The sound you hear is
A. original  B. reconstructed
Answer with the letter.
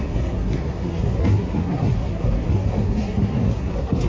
B